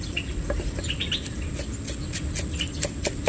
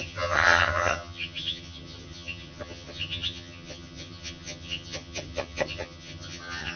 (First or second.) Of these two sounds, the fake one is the second